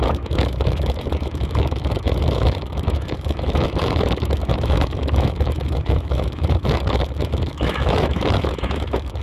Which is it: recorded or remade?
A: remade